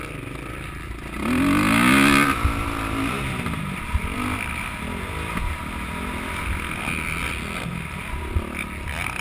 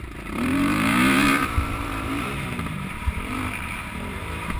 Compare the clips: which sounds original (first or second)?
first